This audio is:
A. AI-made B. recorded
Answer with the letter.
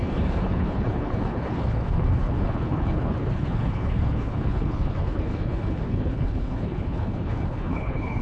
A